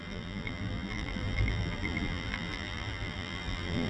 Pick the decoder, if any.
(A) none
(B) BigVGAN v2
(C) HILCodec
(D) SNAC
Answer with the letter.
B